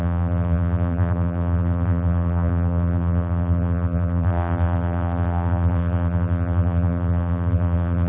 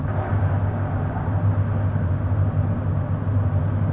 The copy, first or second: first